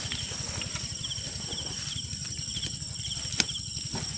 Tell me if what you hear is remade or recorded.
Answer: recorded